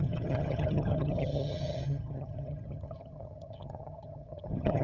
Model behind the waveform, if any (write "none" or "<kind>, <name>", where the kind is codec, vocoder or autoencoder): vocoder, HiFi-GAN